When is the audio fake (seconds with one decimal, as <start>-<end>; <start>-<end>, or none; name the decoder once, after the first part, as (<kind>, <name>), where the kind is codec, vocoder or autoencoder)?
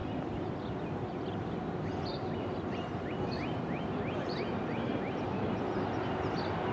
0.0-0.6 (vocoder, BigVGAN v2); 2.1-5.6